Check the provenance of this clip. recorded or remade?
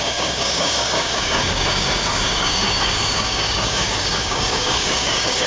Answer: remade